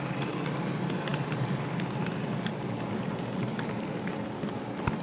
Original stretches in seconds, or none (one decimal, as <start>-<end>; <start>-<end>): 0.0-5.0